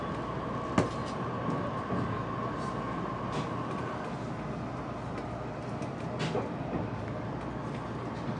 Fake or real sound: real